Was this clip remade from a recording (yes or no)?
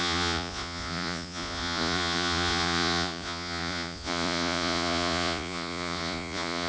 yes